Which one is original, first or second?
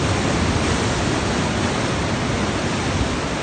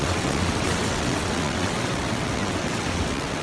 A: first